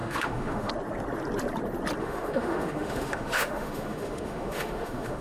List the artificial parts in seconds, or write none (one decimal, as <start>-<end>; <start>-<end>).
0.0-0.7; 2.0-5.2